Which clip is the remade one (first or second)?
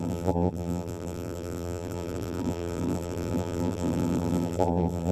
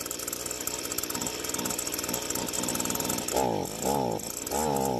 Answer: first